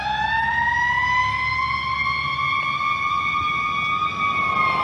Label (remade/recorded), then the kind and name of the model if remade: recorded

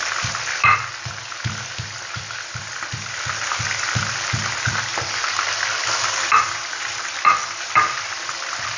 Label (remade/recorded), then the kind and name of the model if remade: recorded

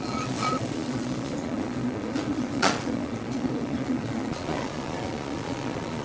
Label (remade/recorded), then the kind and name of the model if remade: remade, vocoder, Vocos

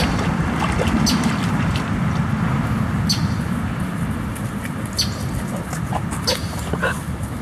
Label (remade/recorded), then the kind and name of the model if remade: recorded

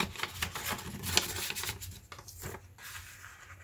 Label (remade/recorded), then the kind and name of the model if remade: recorded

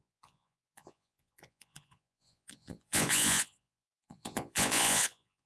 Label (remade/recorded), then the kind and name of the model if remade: remade, vocoder, Vocos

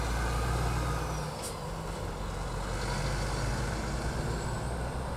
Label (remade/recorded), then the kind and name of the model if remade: recorded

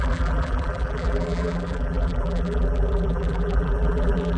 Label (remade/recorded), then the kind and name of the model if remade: remade, vocoder, BigVGAN v2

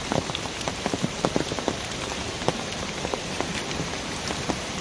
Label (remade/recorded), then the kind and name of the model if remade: remade, vocoder, BigVGAN v2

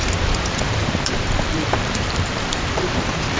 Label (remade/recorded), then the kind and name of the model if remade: remade, vocoder, BigVGAN v2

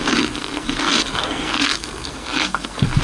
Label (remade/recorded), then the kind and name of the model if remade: remade, codec, SNAC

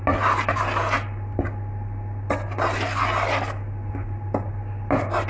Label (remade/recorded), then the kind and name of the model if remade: recorded